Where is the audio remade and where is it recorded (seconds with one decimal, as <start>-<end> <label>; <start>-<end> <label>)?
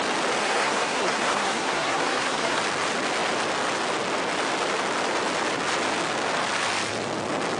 0.0-0.4 recorded; 0.4-2.6 remade; 2.6-7.6 recorded